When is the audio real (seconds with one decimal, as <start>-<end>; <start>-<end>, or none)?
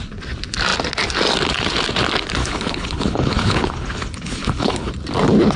0.0-2.4; 4.9-5.6